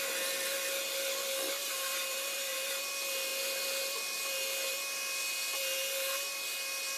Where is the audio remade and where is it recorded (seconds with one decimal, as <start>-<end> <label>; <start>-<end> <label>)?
0.0-1.6 recorded; 1.6-2.7 remade; 2.7-7.0 recorded